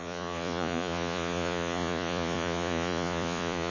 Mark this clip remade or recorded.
remade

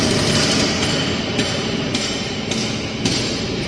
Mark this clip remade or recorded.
recorded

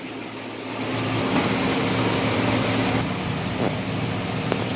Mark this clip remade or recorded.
recorded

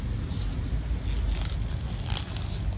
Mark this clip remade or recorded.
recorded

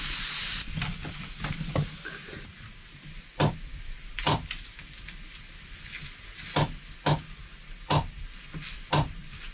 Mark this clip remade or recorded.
recorded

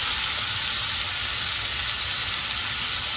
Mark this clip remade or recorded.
recorded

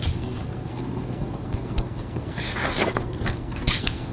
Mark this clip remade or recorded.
remade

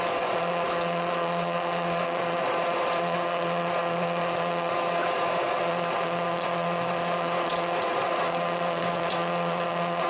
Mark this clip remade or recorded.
remade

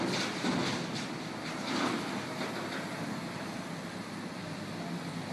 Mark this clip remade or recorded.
recorded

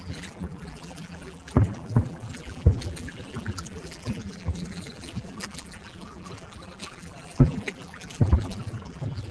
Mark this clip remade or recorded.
remade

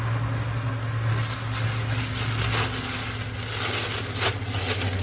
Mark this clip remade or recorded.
recorded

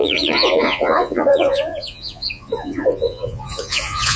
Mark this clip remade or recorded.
remade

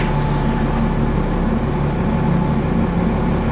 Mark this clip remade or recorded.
recorded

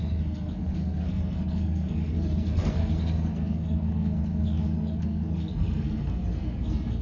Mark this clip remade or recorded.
remade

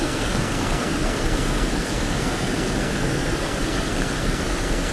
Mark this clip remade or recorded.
remade